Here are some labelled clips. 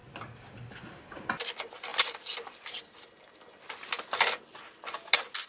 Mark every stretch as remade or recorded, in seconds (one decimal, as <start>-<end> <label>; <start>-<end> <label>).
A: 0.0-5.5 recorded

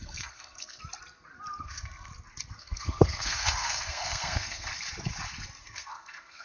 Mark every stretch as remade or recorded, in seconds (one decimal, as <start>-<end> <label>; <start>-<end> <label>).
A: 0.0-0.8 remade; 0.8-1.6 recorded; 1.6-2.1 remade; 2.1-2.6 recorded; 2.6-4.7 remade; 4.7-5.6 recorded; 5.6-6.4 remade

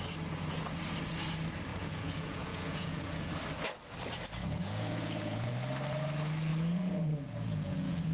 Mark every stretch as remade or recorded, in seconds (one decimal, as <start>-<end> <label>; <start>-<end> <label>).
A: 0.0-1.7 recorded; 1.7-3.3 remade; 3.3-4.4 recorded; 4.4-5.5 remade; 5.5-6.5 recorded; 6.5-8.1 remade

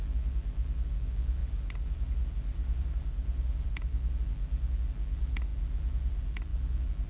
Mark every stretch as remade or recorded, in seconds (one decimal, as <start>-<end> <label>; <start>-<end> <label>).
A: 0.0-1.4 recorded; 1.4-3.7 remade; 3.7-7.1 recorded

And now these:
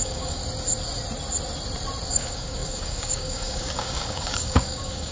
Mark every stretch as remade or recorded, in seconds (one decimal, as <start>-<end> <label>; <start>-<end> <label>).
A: 0.0-0.4 remade; 0.4-2.1 recorded; 2.1-5.1 remade

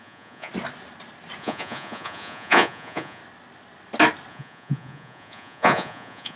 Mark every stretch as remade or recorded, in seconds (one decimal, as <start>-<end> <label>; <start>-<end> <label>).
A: 0.0-0.5 remade; 0.5-1.4 recorded; 1.4-3.2 remade; 3.2-4.3 recorded; 4.3-6.4 remade

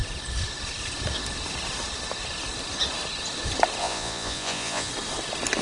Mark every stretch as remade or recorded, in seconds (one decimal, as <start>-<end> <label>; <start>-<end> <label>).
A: 0.0-3.8 recorded; 3.8-4.9 remade; 4.9-5.6 recorded

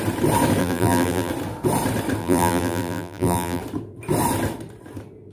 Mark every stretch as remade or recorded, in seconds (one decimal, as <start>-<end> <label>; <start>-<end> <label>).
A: 0.0-0.6 recorded; 0.6-1.3 remade; 1.3-2.2 recorded; 2.2-3.6 remade; 3.6-5.3 recorded